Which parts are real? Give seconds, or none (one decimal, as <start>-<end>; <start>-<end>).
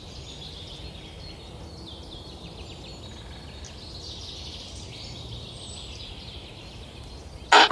0.0-7.7